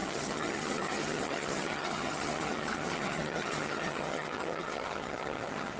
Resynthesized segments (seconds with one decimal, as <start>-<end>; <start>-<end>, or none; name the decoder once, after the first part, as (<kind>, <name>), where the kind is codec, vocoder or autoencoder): 0.0-5.8 (vocoder, HiFi-GAN)